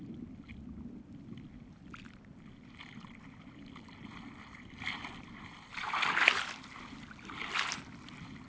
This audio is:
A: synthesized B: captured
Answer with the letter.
B